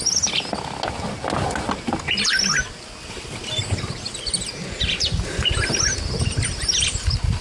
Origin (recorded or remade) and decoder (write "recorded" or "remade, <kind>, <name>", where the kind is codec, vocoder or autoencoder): recorded